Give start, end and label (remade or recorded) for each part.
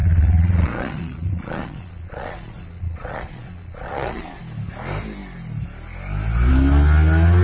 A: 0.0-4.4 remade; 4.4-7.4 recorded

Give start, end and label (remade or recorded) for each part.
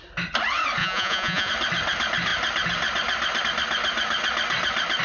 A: 0.0-0.8 recorded; 0.8-1.5 remade; 1.5-5.0 recorded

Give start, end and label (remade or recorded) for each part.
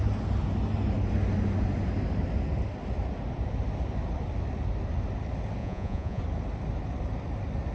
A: 0.0-5.6 recorded; 5.6-6.2 remade; 6.2-7.7 recorded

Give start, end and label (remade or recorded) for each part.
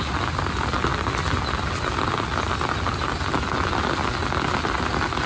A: 0.0-5.3 recorded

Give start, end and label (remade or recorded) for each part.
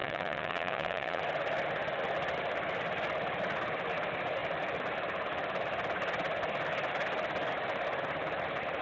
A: 0.0-1.2 remade; 1.2-8.8 recorded